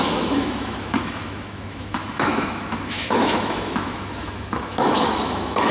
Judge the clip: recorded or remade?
remade